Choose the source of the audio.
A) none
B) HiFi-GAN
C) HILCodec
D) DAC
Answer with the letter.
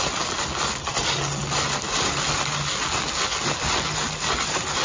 A